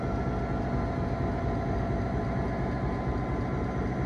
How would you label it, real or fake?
real